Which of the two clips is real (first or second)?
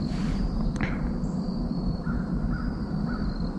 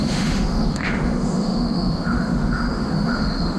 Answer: first